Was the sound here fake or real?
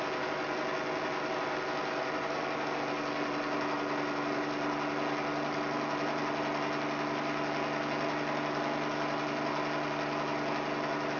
real